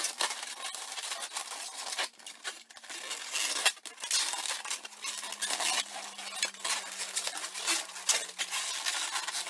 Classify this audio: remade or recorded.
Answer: recorded